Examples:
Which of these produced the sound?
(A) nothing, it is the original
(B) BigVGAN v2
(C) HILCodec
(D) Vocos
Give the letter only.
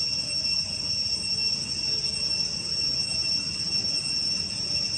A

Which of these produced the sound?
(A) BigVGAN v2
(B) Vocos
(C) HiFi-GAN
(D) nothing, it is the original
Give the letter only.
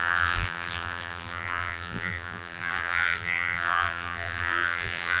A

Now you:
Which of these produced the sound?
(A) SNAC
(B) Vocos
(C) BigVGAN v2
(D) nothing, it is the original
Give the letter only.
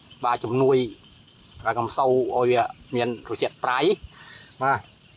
C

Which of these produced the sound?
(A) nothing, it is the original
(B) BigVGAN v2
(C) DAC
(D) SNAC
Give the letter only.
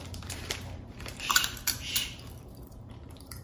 B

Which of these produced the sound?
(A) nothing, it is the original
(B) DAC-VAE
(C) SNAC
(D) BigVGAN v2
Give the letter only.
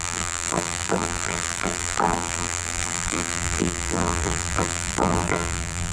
D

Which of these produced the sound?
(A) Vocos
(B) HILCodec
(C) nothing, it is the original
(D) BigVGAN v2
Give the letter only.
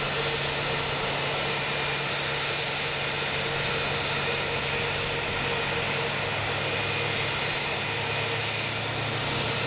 C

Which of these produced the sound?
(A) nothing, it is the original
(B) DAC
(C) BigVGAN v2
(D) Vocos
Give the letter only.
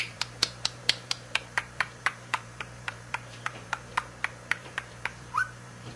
C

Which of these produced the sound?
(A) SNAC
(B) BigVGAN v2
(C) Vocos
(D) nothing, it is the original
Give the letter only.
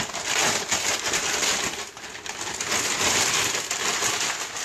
D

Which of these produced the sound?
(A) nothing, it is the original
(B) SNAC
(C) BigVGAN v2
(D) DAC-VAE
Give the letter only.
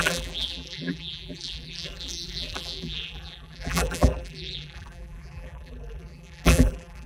C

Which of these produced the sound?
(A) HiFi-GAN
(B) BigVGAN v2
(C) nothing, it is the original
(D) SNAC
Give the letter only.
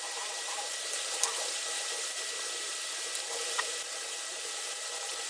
B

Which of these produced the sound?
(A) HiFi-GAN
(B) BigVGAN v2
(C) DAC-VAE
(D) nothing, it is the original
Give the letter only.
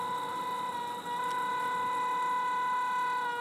D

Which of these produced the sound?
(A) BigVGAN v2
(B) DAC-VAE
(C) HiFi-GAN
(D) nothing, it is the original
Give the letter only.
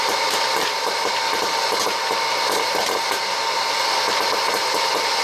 D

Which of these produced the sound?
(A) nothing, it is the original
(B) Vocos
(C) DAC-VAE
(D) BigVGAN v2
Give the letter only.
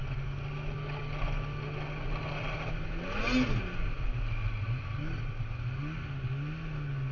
A